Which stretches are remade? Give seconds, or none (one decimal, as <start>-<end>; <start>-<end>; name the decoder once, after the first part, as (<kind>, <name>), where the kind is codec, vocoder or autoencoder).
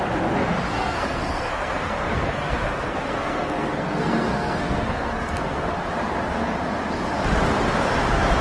0.7-5.7 (codec, SNAC)